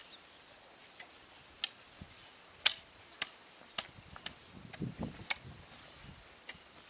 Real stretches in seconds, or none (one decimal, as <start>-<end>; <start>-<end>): 0.0-6.9